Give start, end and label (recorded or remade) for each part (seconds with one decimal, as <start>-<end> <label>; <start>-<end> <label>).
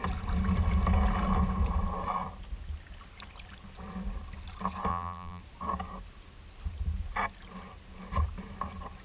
0.0-4.9 recorded; 4.9-5.4 remade; 5.4-9.0 recorded